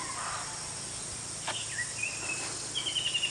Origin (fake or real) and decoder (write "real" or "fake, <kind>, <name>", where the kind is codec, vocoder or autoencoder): real